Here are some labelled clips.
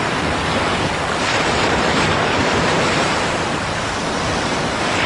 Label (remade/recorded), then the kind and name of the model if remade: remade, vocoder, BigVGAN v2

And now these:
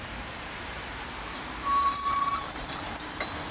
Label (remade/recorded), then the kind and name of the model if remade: remade, vocoder, BigVGAN v2